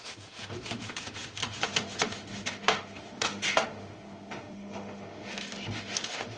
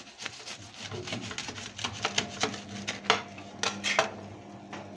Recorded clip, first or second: second